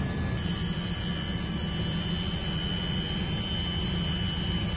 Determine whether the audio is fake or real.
real